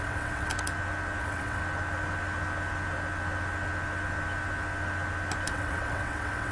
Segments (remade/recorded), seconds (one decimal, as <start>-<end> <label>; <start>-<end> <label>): 0.0-0.5 remade; 0.5-1.2 recorded; 1.2-1.6 remade; 1.6-5.5 recorded; 5.5-6.5 remade